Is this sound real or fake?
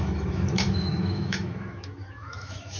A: fake